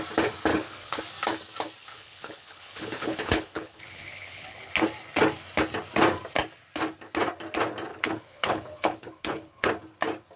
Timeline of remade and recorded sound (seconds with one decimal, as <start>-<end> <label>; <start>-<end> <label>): 0.0-0.5 recorded; 0.5-1.0 remade; 1.0-1.8 recorded; 1.8-4.7 remade; 4.7-7.9 recorded; 7.9-9.7 remade; 9.7-10.4 recorded